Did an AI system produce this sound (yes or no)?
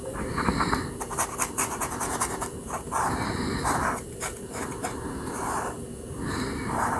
yes